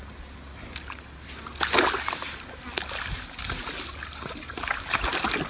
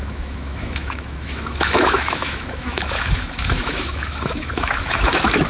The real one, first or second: first